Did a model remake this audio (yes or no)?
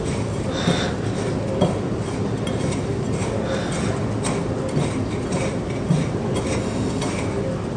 no